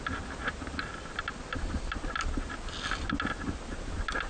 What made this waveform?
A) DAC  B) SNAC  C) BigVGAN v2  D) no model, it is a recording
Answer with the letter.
D